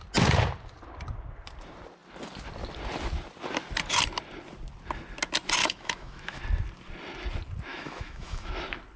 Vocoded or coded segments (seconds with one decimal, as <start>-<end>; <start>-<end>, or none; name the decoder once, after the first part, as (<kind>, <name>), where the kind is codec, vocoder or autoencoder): 5.6-6.4 (autoencoder, DAC-VAE); 7.7-8.5